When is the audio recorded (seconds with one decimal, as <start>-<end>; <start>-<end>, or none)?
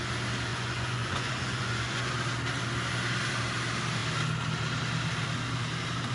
0.0-0.5; 2.1-6.1